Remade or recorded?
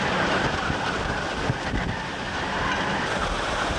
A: recorded